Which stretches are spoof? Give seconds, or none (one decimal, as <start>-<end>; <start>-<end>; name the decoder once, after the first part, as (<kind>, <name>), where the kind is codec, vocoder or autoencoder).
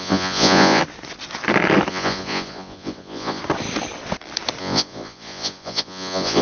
0.0-0.8 (vocoder, Vocos); 1.9-3.4; 4.6-6.4